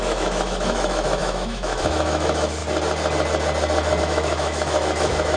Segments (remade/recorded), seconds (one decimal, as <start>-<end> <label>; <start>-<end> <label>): 0.0-2.6 remade; 2.6-4.0 recorded; 4.0-5.4 remade